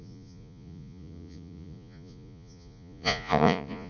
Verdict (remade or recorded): remade